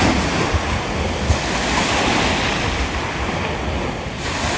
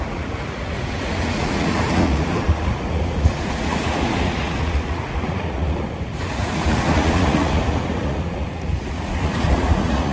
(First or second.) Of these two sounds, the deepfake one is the second